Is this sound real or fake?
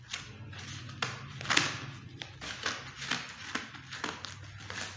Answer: real